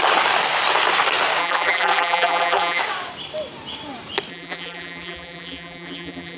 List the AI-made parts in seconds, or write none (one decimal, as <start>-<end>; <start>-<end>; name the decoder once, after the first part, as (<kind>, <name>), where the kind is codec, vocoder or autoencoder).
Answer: 1.4-2.8 (vocoder, BigVGAN v2); 4.3-6.4